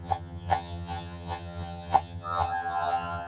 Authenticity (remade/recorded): remade